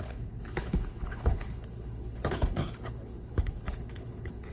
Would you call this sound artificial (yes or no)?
yes